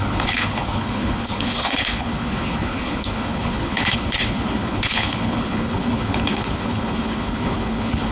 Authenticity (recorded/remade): remade